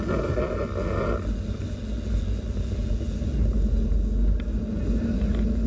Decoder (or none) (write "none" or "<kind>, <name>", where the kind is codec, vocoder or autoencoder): none